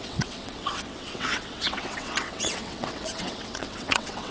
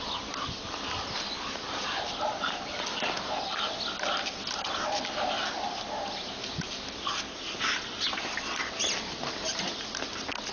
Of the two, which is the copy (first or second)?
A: first